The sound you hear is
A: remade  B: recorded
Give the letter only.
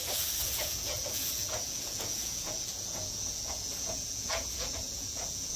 A